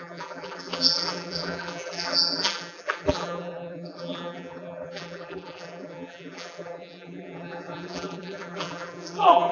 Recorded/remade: remade